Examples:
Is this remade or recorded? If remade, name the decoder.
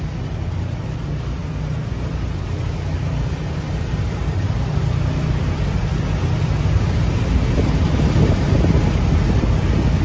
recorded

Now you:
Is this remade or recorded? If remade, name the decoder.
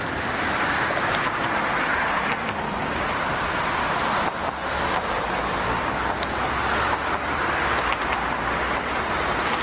recorded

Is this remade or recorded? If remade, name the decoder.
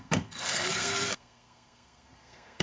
remade, codec, SNAC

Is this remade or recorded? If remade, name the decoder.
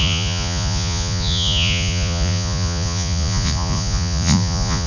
remade, vocoder, Vocos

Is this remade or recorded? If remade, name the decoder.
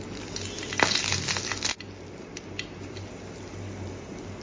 recorded